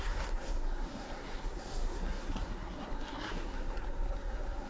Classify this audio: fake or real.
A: fake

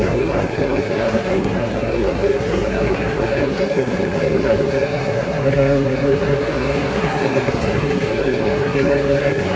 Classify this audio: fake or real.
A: fake